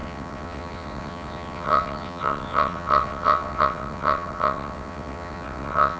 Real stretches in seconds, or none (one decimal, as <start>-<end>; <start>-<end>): none